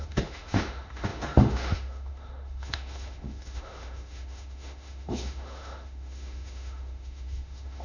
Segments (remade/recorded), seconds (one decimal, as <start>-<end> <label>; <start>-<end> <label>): 0.0-7.8 remade